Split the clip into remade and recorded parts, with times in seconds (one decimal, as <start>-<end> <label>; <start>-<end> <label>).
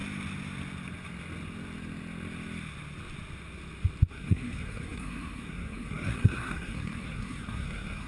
0.0-4.1 recorded; 4.1-8.1 remade